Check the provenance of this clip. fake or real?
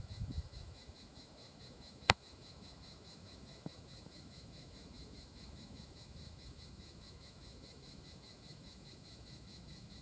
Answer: fake